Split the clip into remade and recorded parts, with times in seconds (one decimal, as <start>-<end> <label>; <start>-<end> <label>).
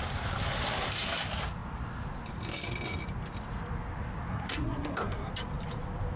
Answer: 0.0-4.3 recorded; 4.3-5.3 remade; 5.3-6.2 recorded